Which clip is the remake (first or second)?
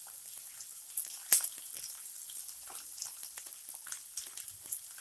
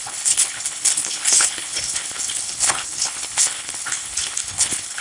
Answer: second